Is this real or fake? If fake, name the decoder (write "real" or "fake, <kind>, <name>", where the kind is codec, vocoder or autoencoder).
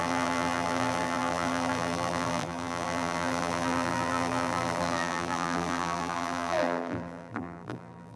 fake, vocoder, BigVGAN v2